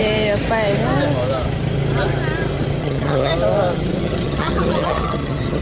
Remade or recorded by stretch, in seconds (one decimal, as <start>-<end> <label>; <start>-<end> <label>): 0.0-2.8 recorded; 2.8-3.3 remade; 3.3-4.0 recorded; 4.0-5.6 remade